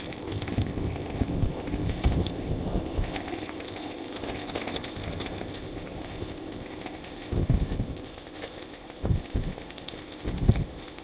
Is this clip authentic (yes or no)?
no